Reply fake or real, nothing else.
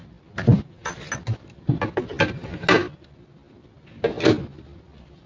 real